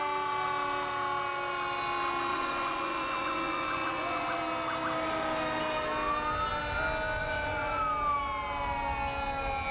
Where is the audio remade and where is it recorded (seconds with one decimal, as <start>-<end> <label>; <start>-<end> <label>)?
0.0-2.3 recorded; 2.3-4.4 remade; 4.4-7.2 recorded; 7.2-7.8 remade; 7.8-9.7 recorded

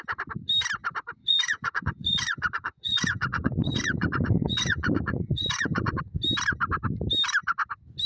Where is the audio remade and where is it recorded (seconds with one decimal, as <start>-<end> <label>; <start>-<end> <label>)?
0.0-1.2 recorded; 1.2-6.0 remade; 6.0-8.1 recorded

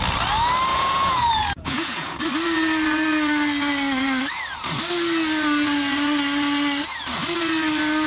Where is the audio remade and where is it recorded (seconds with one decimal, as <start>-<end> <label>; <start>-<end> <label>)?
0.0-0.7 recorded; 0.7-2.2 remade; 2.2-8.1 recorded